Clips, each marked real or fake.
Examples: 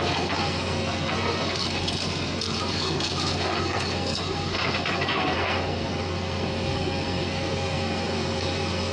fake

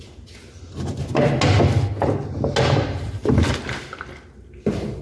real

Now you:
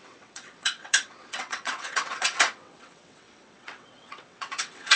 fake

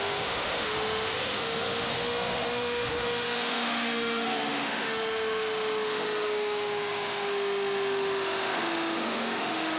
fake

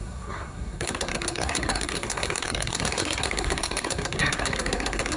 fake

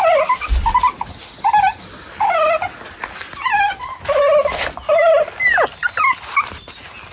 real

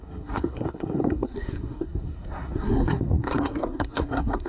fake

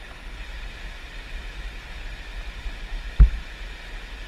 real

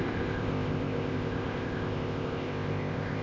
fake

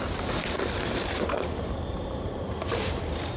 fake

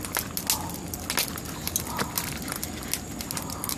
real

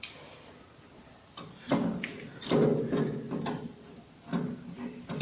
real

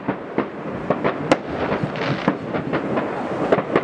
real